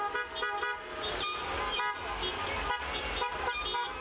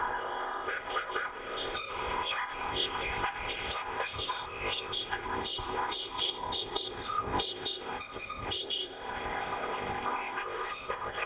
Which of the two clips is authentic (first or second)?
first